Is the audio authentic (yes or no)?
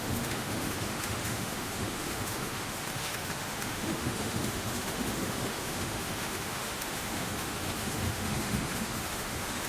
no